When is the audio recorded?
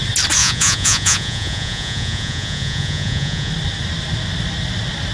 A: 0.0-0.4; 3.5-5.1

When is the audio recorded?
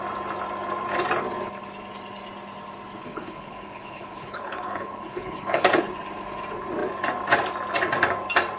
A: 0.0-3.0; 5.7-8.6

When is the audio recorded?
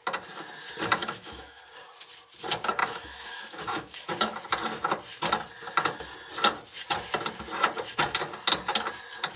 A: 0.0-1.0; 1.6-2.8; 4.1-9.4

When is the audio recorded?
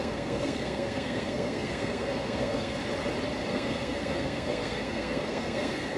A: 2.8-3.5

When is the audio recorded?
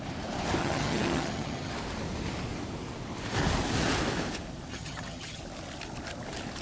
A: 0.0-0.6; 1.7-4.7; 5.4-6.6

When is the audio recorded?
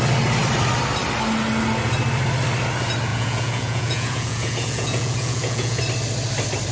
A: 0.0-3.1; 5.8-6.7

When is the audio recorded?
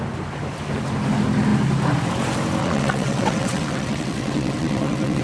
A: 0.0-2.6